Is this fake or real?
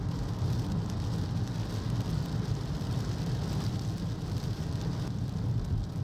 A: real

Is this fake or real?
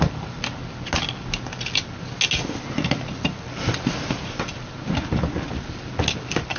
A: real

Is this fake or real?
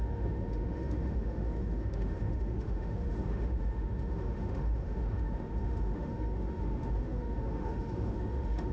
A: fake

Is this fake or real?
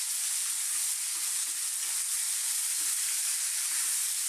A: real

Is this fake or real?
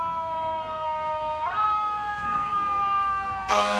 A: fake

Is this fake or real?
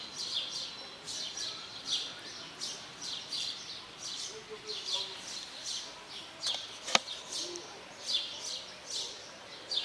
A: real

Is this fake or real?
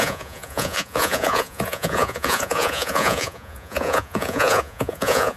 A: fake